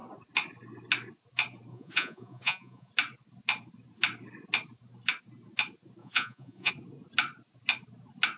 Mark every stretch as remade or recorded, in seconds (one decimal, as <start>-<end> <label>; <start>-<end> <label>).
0.0-1.7 recorded; 1.7-2.9 remade; 2.9-6.0 recorded; 6.0-6.7 remade; 6.7-8.4 recorded

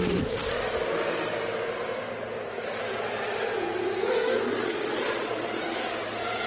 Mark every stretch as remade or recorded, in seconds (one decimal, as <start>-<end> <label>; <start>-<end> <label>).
0.0-4.6 recorded; 4.6-5.6 remade; 5.6-6.5 recorded

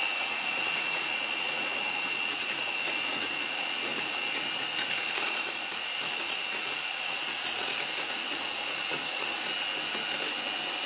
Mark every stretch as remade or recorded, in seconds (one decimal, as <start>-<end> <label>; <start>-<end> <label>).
0.0-9.5 remade; 9.5-10.9 recorded

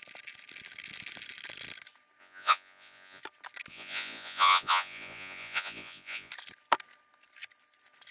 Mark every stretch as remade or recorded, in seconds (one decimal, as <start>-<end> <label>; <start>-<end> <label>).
0.0-2.2 recorded; 2.2-3.2 remade; 3.2-3.7 recorded; 3.7-6.3 remade; 6.3-8.1 recorded

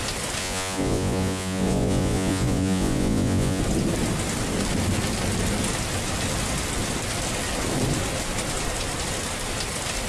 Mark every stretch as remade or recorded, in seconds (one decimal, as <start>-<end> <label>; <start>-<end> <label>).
0.0-0.4 recorded; 0.4-3.6 remade; 3.6-10.1 recorded

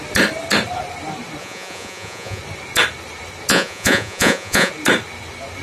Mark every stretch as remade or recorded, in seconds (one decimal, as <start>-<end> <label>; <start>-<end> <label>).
0.0-1.4 recorded; 1.4-2.4 remade; 2.4-3.5 recorded; 3.5-4.7 remade; 4.7-5.6 recorded